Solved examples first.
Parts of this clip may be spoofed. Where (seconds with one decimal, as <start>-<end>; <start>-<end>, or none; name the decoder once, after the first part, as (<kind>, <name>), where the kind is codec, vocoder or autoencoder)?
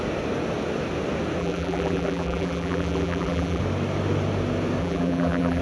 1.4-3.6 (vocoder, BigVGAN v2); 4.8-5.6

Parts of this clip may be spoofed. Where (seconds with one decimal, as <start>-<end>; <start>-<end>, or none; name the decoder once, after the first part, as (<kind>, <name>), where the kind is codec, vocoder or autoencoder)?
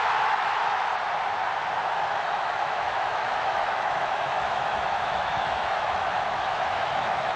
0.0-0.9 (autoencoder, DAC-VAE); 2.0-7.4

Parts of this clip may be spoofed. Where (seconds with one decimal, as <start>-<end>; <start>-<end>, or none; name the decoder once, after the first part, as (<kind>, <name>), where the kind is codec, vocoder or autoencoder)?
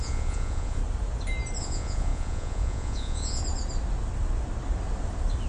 0.0-0.8 (vocoder, Vocos); 1.6-3.4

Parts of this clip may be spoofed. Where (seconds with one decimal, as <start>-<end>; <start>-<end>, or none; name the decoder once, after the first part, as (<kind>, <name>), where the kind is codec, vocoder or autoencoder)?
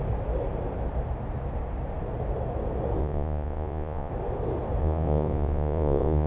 3.0-4.1 (vocoder, Vocos); 4.8-6.3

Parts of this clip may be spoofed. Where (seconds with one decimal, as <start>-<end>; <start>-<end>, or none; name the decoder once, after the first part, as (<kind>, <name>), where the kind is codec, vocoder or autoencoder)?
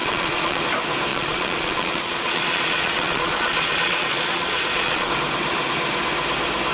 0.0-0.6 (vocoder, Vocos); 1.1-5.1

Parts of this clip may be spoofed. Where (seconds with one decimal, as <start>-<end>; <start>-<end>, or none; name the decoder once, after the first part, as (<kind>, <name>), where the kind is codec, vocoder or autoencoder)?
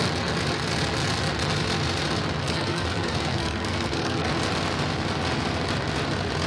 2.4-4.3 (codec, SNAC)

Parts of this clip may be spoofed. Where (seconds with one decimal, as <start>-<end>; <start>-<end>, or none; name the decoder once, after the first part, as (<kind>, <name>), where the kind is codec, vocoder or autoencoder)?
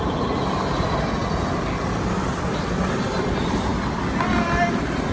none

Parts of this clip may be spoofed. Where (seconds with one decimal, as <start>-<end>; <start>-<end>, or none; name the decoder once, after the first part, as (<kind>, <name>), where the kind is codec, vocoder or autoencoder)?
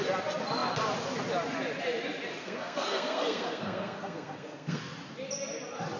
2.4-4.8 (codec, SNAC)